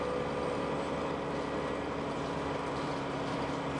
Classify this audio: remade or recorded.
recorded